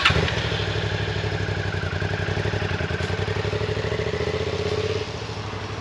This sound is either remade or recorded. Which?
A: recorded